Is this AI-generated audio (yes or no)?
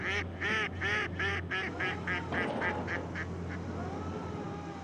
no